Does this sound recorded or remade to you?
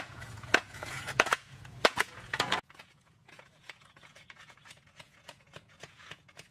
remade